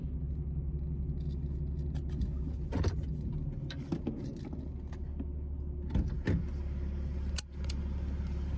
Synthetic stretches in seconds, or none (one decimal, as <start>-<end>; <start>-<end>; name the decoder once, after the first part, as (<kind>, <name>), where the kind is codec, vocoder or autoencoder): none